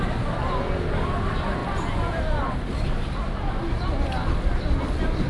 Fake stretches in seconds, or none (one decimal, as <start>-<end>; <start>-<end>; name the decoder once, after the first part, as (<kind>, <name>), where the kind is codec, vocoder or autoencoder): none